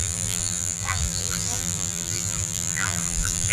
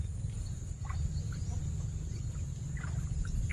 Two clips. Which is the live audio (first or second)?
second